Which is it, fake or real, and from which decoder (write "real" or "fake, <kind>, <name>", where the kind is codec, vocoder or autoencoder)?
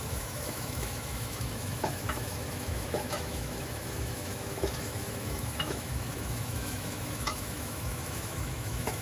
fake, autoencoder, DAC-VAE